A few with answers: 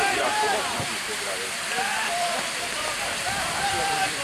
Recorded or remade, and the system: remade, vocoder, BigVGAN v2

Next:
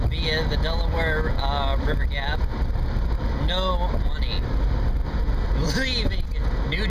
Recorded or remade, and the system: recorded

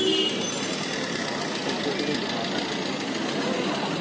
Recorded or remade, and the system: recorded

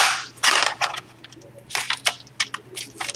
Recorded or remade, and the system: recorded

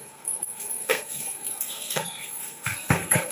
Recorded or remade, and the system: remade, codec, SNAC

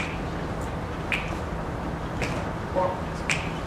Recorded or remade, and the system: recorded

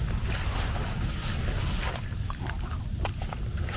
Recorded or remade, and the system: recorded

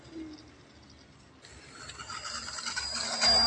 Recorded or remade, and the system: recorded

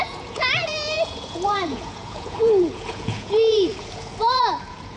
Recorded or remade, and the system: remade, vocoder, Vocos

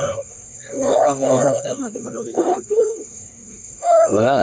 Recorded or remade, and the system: remade, codec, SNAC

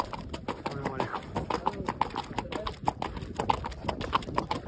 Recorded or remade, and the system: recorded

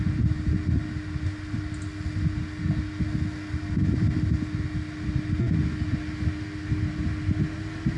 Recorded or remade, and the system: recorded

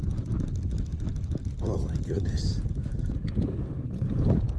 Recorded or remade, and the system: recorded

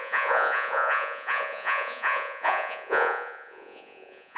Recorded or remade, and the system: remade, vocoder, Vocos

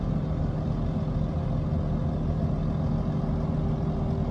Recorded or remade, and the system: recorded